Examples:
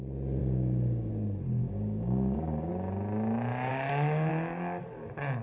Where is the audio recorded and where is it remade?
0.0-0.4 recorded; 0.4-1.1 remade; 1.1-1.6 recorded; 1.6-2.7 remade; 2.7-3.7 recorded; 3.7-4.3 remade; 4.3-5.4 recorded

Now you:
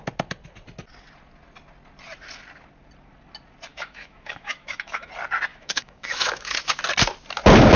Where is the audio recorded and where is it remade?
0.0-3.7 recorded; 3.7-5.1 remade; 5.1-5.5 recorded; 5.5-6.8 remade; 6.8-7.8 recorded

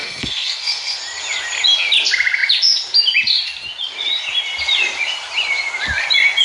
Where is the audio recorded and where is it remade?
0.0-1.0 remade; 1.0-6.4 recorded

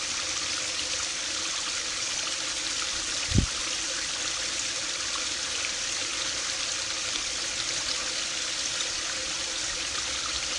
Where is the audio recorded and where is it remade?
0.0-10.6 recorded

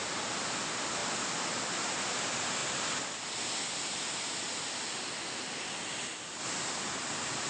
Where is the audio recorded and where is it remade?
0.0-7.5 recorded

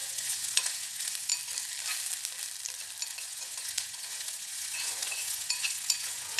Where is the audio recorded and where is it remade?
0.0-1.3 remade; 1.3-3.1 recorded; 3.1-6.4 remade